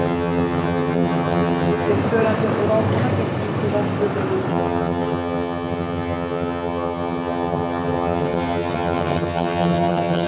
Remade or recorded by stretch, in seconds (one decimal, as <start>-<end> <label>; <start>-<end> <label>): 0.0-1.9 remade; 1.9-4.5 recorded; 4.5-10.3 remade